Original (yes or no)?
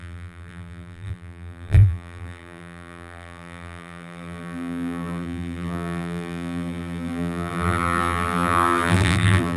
no